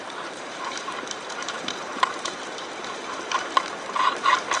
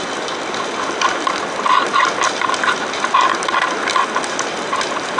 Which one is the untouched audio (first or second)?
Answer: second